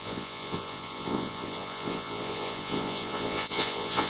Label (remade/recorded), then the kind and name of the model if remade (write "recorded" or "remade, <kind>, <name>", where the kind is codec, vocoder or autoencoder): remade, vocoder, Vocos